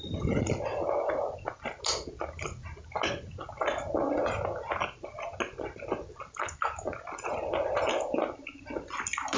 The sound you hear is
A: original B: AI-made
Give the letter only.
A